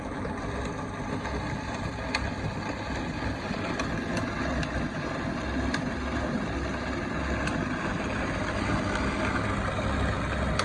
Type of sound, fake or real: real